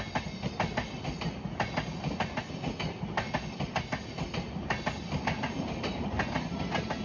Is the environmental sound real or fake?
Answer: real